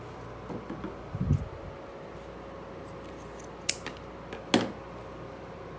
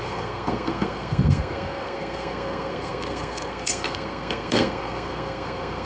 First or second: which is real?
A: first